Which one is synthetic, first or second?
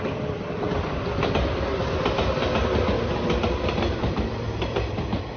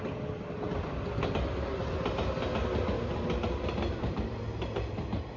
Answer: first